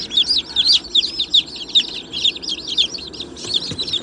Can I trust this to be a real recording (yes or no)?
yes